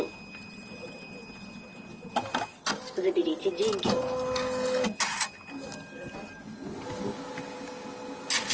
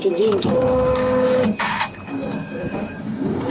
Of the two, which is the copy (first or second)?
second